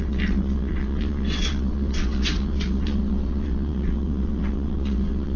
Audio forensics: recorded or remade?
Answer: remade